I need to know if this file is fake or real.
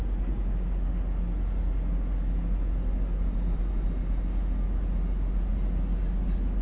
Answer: real